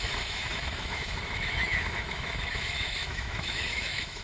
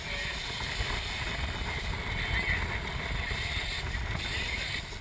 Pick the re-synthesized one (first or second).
first